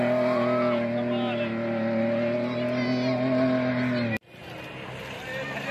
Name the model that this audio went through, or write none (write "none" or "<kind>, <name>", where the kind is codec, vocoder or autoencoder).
none